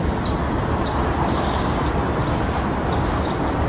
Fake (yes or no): no